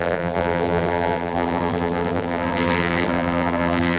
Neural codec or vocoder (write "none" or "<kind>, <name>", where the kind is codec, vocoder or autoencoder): vocoder, BigVGAN v2